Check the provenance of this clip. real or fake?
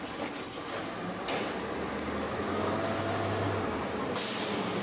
real